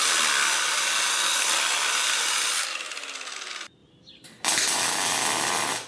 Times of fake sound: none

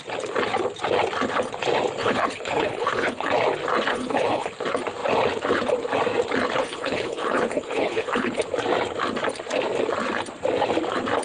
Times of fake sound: 2.0-3.3 (codec, HILCodec); 3.9-4.5; 6.6-8.4

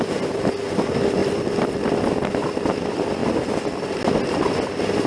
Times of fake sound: none

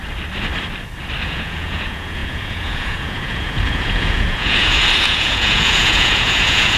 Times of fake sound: 1.2-6.8 (vocoder, Vocos)

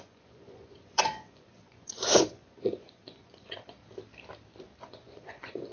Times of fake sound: 0.0-3.8 (vocoder, Vocos); 4.8-5.7